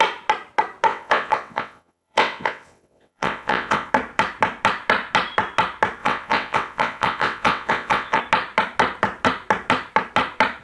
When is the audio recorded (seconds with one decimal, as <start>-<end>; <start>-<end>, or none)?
0.0-0.9; 3.9-6.0; 8.2-10.6

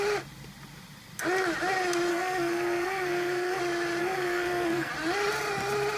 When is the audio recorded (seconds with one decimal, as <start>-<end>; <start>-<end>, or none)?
0.0-2.1; 3.6-4.0; 4.9-6.0

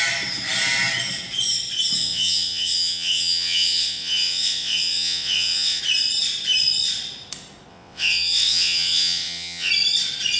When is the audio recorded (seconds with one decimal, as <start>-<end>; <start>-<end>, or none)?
0.0-2.0; 5.8-7.7; 9.7-10.4

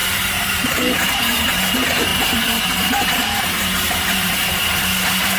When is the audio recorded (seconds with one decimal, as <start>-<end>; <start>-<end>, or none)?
1.7-2.1

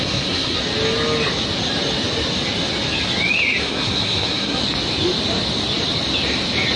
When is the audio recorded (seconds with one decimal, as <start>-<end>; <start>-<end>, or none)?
0.6-3.6; 4.6-6.8

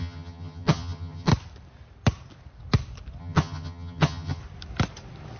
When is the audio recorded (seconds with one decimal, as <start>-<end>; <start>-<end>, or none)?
1.3-3.2; 4.4-5.4